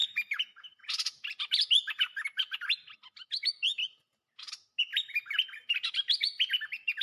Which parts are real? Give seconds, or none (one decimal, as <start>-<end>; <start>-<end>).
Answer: 2.0-3.7; 4.5-7.0